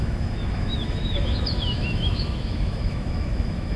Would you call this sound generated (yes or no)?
yes